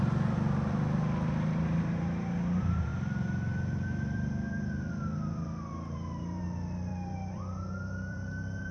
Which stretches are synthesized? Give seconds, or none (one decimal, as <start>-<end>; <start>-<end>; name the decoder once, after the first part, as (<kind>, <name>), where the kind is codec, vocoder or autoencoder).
2.9-6.4 (vocoder, BigVGAN v2); 6.9-8.7